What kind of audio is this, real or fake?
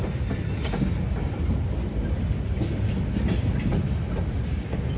real